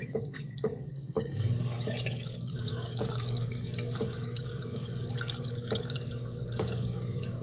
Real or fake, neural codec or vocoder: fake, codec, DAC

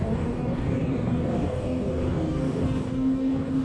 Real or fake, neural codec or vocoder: fake, codec, DAC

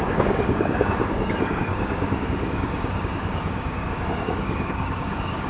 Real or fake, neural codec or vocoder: fake, codec, DAC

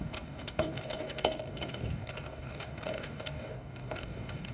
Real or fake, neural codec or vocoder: fake, codec, DAC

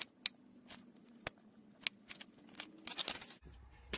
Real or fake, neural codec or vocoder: real